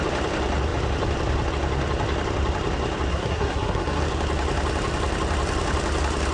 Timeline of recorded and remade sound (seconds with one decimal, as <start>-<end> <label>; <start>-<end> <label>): 0.0-3.1 recorded; 3.1-4.0 remade; 4.0-6.3 recorded